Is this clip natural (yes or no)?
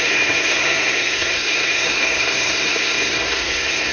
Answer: no